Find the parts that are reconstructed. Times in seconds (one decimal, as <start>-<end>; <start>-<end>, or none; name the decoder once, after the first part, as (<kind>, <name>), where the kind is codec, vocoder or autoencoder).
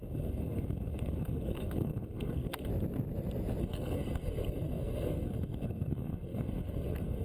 0.0-2.7 (codec, SNAC); 3.6-7.2